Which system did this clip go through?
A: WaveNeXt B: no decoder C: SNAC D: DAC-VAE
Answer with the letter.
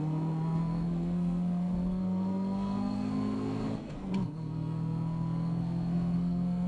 C